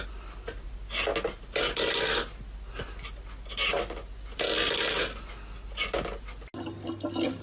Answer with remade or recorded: recorded